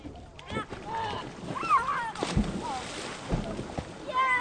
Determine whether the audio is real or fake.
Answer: real